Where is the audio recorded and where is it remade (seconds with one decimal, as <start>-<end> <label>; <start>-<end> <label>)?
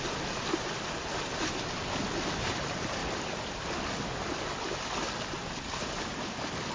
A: 0.0-6.7 recorded